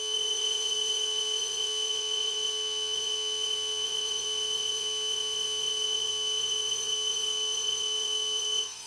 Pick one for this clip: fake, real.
fake